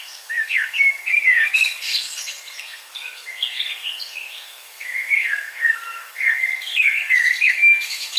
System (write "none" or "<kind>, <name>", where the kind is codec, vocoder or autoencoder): codec, SNAC